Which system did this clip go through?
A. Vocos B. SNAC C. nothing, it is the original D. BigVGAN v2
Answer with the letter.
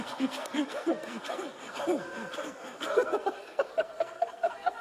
B